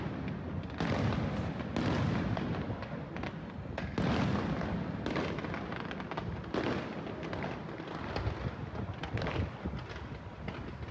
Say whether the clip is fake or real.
real